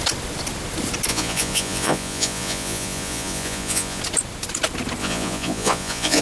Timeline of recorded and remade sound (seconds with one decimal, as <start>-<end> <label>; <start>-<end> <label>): 0.0-1.1 recorded; 1.1-4.0 remade; 4.0-5.0 recorded; 5.0-6.2 remade